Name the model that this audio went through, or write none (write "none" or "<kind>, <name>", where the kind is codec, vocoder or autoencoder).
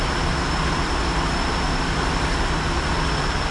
vocoder, BigVGAN v2